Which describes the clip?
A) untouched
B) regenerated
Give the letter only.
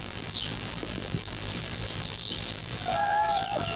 B